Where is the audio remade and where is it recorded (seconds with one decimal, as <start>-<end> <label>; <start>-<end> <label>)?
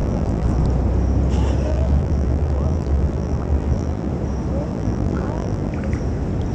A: 0.0-0.6 remade; 0.6-1.7 recorded; 1.7-4.1 remade; 4.1-4.7 recorded; 4.7-5.7 remade; 5.7-6.5 recorded